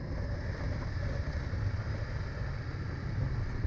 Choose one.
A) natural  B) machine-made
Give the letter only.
A